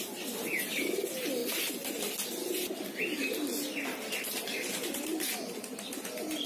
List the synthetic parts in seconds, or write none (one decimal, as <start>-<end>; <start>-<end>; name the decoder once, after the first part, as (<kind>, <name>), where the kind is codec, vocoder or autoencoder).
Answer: none